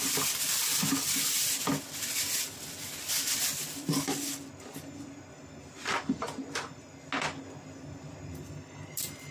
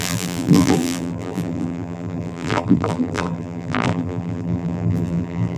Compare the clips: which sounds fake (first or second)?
second